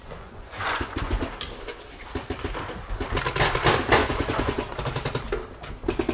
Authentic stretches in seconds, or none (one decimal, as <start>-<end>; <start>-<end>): 1.2-4.0; 4.8-6.1